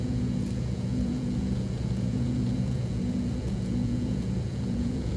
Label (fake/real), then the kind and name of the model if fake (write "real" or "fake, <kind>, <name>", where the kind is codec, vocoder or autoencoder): fake, vocoder, Vocos